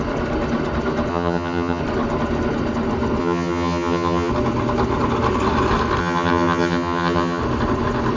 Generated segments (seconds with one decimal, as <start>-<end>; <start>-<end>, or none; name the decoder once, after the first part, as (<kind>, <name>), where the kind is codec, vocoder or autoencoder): 1.1-1.8 (vocoder, HiFi-GAN); 3.2-4.3; 6.0-7.4